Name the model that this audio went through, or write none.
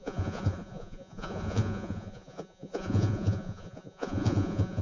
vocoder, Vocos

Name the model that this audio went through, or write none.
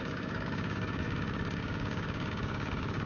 codec, DAC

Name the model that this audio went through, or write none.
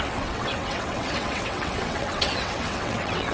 vocoder, WaveNeXt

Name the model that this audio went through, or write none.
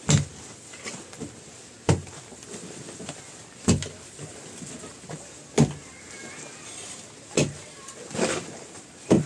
none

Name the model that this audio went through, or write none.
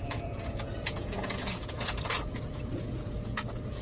vocoder, Vocos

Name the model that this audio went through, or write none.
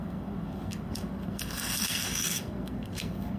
codec, SNAC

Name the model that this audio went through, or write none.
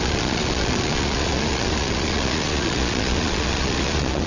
vocoder, Vocos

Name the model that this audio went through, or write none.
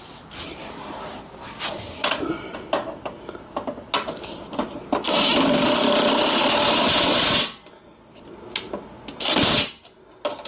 none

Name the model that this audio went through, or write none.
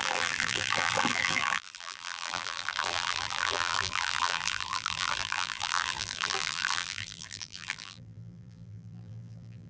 vocoder, BigVGAN v2